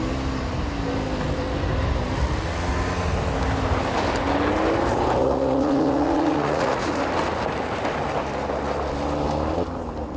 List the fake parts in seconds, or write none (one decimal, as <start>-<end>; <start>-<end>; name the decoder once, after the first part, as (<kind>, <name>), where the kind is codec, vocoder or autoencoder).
5.2-7.0 (vocoder, Vocos)